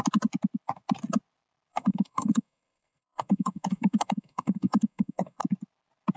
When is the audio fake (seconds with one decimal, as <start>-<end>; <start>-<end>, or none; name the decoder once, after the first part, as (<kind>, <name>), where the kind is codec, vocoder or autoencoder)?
1.7-5.4 (codec, SNAC)